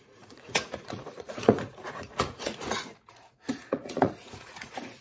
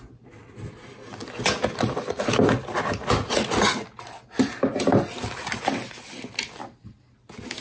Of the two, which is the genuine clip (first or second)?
second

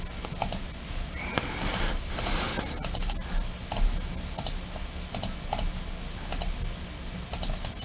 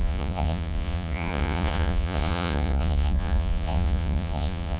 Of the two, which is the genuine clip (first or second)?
first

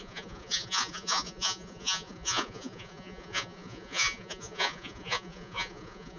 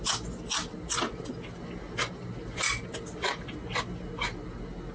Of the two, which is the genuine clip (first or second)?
second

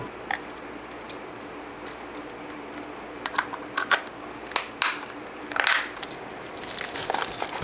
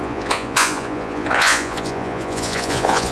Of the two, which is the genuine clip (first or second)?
first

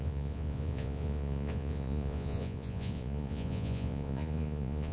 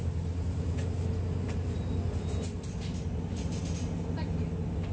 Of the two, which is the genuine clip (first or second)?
second